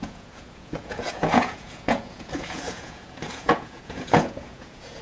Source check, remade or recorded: remade